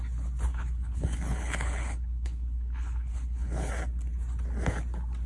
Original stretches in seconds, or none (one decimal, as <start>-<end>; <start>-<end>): 0.0-0.5; 3.7-5.3